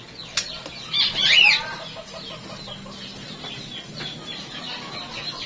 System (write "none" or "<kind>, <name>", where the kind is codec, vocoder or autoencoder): none